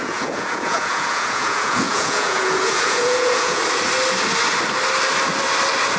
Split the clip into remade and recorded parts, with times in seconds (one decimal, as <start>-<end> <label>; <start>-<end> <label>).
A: 0.0-3.6 remade; 3.6-6.0 recorded